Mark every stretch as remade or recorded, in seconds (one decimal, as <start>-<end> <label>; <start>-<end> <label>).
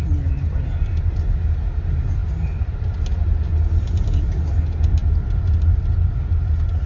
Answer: 0.0-6.9 recorded